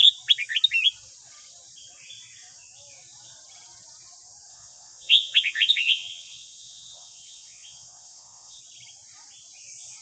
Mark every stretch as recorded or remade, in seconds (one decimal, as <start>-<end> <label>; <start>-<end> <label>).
0.0-4.5 recorded; 4.5-8.6 remade; 8.6-10.0 recorded